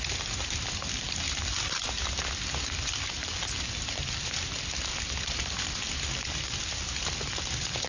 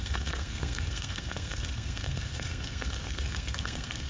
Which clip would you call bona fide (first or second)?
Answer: first